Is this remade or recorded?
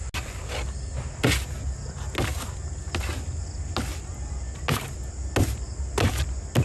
recorded